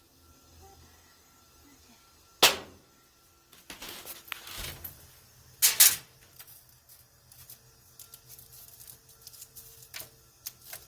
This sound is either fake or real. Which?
real